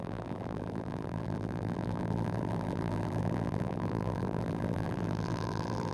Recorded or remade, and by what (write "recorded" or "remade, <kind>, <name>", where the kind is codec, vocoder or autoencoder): remade, vocoder, BigVGAN v2